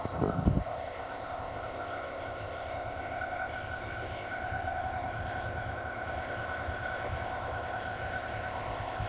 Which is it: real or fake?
fake